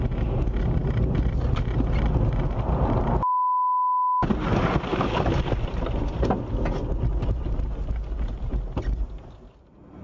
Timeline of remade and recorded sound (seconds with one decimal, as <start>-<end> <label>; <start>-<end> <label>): 0.0-10.0 recorded